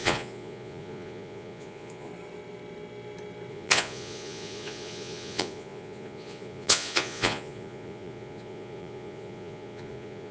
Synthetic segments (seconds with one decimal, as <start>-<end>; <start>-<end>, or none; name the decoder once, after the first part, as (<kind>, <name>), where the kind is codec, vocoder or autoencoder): 0.0-2.1 (vocoder, Vocos); 3.5-10.3